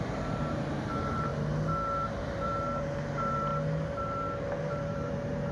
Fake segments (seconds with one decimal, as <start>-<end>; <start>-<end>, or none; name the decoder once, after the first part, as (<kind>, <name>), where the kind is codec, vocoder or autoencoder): 0.0-1.3 (vocoder, BigVGAN v2); 2.2-3.5; 4.6-5.5